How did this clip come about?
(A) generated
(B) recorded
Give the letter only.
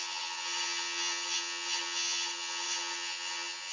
A